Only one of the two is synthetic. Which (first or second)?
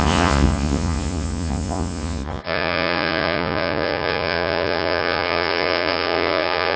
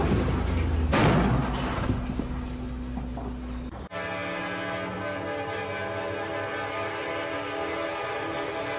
first